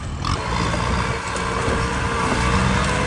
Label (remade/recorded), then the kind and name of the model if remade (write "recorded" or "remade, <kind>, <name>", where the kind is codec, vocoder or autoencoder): recorded